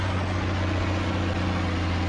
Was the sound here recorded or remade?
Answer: recorded